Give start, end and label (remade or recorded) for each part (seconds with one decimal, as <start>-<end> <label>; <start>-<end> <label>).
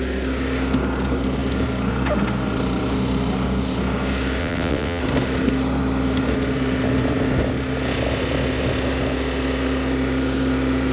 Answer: 0.0-4.4 recorded; 4.4-5.0 remade; 5.0-10.9 recorded